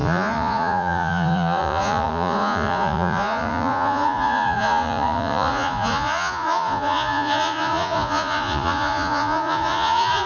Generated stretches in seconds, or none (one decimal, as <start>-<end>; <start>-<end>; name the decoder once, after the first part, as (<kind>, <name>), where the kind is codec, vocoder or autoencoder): 0.0-10.3 (vocoder, Vocos)